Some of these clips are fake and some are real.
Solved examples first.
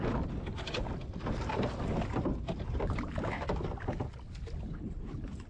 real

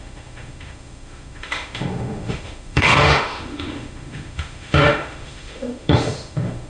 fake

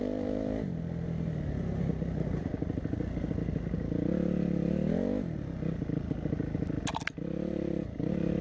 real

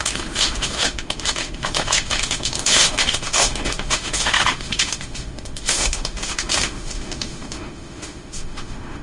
fake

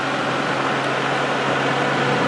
real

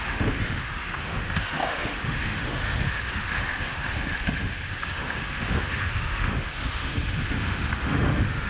fake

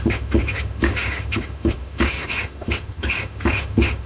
fake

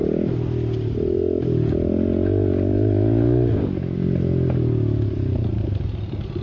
real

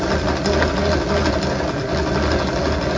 real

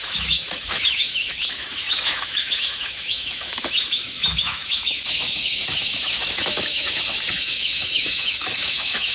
fake